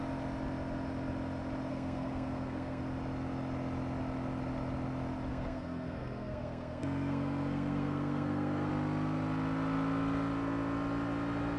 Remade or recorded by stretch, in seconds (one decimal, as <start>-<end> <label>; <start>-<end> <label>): 0.0-1.7 recorded; 1.7-2.8 remade; 2.8-5.3 recorded; 5.3-8.7 remade; 8.7-11.6 recorded

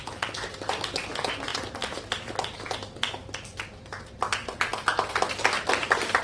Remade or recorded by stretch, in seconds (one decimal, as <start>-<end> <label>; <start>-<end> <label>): 0.0-6.2 recorded

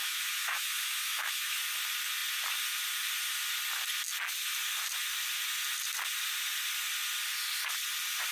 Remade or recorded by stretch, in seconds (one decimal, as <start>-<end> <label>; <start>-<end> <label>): 0.0-1.6 remade; 1.6-8.3 recorded

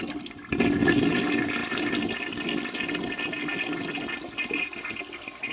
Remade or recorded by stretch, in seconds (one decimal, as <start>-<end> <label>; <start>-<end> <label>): 0.0-5.5 recorded

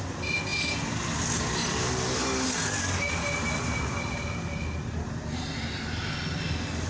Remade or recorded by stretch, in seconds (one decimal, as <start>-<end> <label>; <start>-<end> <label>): 0.0-6.9 recorded

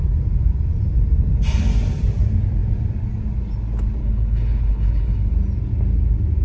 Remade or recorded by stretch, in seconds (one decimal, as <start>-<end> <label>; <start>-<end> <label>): 0.0-4.0 recorded; 4.0-5.3 remade; 5.3-6.4 recorded

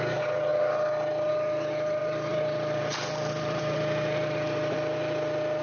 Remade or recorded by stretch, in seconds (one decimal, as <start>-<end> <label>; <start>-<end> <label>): 0.0-2.0 recorded; 2.0-3.8 remade; 3.8-5.6 recorded

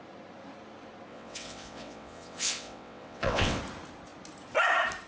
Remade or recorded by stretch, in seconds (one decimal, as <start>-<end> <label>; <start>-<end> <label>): 0.0-1.1 recorded; 1.1-3.6 remade; 3.6-5.1 recorded